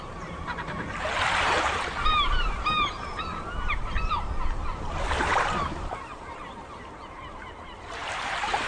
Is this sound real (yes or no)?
no